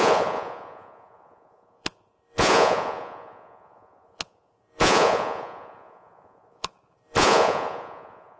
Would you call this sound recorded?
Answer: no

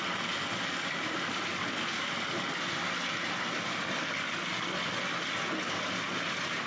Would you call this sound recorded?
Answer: yes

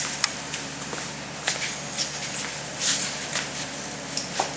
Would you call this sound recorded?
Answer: yes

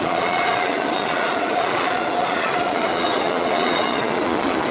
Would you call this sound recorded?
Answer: no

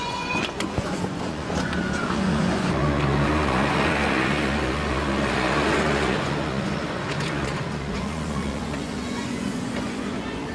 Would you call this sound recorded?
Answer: no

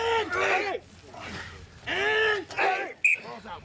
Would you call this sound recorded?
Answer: yes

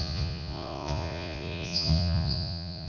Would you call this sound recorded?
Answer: no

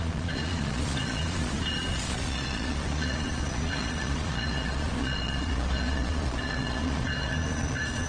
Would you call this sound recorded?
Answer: no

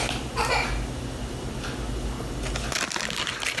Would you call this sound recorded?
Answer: yes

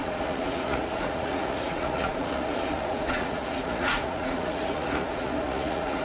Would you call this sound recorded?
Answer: no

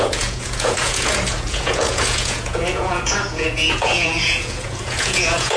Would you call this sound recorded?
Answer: no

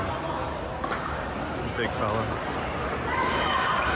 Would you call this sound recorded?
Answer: yes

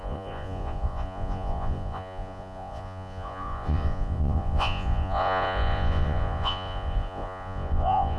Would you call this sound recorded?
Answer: no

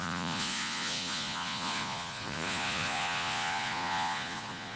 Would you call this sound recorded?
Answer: no